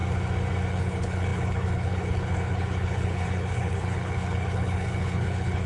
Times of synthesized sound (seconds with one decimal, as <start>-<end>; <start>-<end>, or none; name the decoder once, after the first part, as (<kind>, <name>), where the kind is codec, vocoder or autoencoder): 0.7-5.7 (codec, HILCodec)